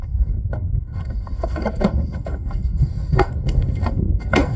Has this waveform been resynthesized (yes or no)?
yes